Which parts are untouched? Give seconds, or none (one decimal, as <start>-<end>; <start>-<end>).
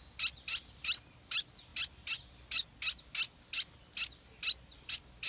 0.0-5.3